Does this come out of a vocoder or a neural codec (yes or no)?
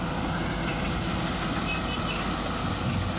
no